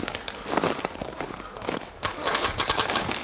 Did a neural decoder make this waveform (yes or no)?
yes